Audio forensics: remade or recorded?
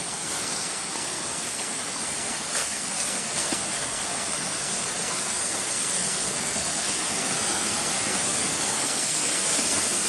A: remade